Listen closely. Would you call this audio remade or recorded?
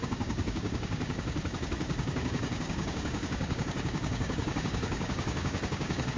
remade